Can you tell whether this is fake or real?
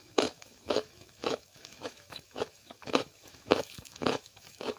fake